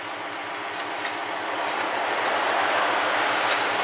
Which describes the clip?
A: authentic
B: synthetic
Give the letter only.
A